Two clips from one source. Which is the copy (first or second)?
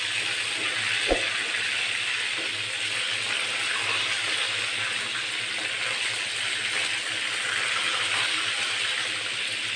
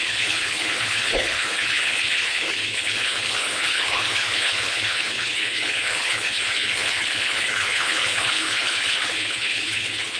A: second